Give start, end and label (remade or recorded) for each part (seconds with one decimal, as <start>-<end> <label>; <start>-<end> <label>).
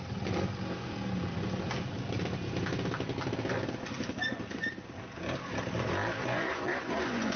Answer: 0.0-6.2 recorded; 6.2-7.4 remade